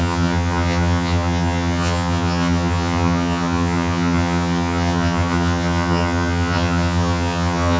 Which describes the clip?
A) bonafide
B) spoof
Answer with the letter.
B